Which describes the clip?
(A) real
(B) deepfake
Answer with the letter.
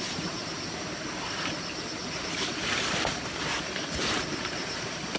B